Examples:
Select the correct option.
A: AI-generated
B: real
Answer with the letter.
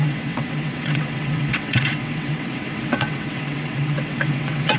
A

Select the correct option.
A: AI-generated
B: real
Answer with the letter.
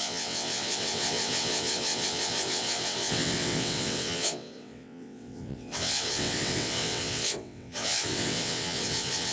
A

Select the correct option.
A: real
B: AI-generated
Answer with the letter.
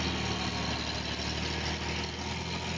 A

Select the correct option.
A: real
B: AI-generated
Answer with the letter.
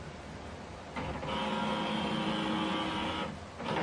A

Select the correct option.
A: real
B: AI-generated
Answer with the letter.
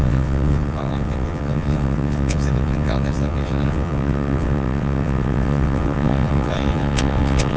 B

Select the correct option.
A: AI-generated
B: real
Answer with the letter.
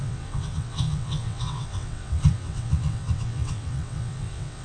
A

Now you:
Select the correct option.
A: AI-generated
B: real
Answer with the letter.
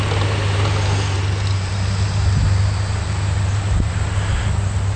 B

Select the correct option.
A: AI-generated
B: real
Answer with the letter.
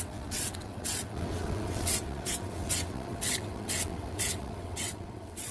A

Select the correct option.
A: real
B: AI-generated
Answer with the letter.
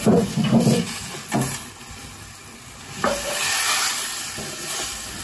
A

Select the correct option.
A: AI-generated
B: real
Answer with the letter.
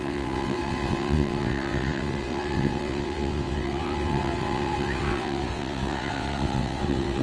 A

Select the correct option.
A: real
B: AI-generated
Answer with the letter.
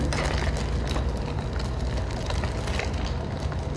A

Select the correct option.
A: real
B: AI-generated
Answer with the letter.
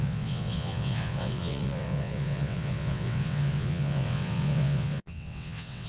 B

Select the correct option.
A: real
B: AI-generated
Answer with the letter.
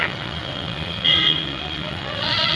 B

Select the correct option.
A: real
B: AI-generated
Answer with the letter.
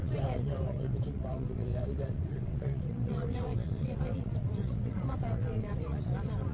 B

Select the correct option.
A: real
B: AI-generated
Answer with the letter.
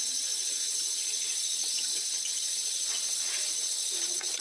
B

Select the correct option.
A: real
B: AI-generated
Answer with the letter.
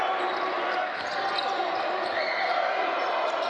A